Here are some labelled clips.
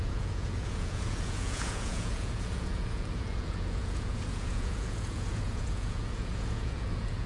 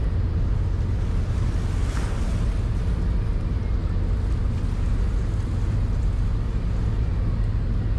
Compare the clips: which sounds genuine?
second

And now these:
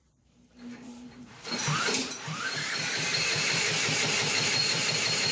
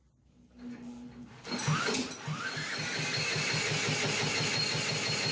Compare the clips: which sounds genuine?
second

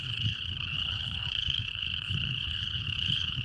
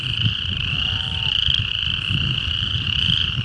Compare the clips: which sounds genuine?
second